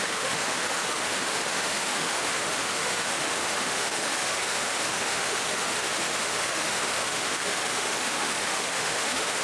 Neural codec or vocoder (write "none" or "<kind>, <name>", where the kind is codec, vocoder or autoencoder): autoencoder, DAC-VAE